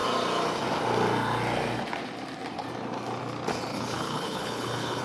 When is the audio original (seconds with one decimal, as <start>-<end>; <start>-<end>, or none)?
0.0-3.7